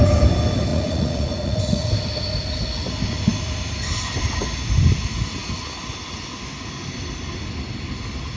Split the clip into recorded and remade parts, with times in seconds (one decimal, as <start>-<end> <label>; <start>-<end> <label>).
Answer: 0.0-0.7 recorded; 0.7-1.9 remade; 1.9-8.4 recorded